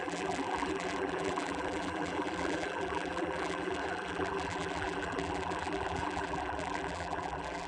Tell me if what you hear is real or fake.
fake